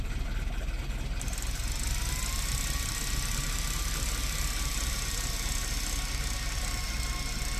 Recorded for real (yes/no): yes